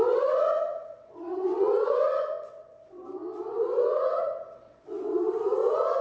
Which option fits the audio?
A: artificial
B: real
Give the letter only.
A